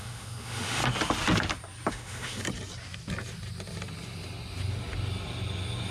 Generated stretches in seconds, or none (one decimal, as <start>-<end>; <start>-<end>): 0.0-0.8; 1.9-2.4